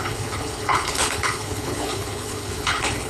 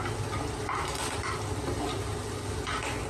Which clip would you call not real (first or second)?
first